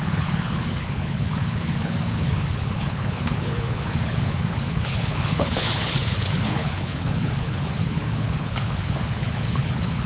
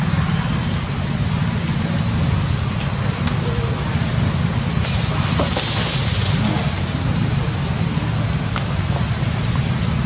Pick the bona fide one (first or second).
second